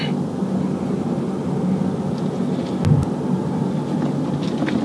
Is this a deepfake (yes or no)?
no